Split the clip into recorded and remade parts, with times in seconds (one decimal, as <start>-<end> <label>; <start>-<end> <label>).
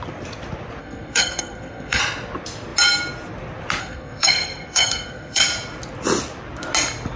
0.0-0.8 recorded; 0.8-2.0 remade; 2.0-3.8 recorded; 3.8-5.4 remade; 5.4-7.2 recorded